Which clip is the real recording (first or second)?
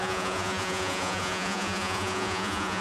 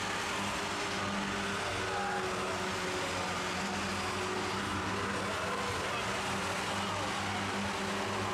second